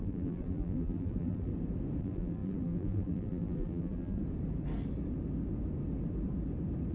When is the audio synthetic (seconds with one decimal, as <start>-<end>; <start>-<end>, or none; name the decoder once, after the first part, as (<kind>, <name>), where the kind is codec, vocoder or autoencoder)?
0.0-1.5 (vocoder, BigVGAN v2); 2.0-4.2